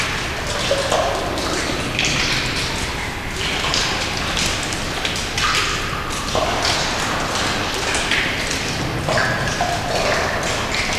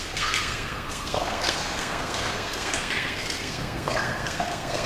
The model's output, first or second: second